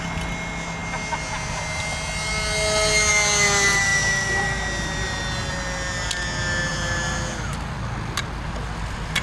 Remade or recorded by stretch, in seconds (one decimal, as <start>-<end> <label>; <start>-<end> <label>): 0.0-9.2 recorded